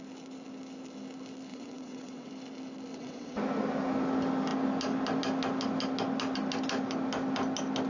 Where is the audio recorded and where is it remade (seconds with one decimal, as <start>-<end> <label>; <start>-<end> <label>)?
0.0-1.5 recorded; 1.5-2.3 remade; 2.3-2.9 recorded; 2.9-3.4 remade; 3.4-7.9 recorded